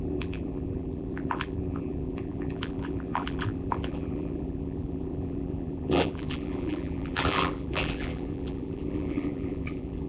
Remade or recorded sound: remade